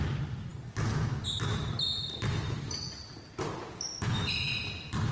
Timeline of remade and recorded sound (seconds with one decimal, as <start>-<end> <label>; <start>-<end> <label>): 0.0-5.1 recorded